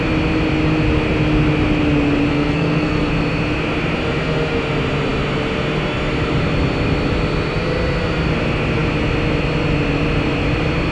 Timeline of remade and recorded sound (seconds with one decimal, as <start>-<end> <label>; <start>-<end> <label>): 0.0-2.3 recorded; 2.3-3.1 remade; 3.1-10.9 recorded